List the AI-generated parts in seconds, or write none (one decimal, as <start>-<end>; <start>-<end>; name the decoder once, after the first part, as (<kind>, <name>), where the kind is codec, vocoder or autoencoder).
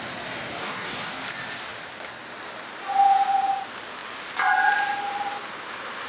0.6-1.1 (codec, DAC)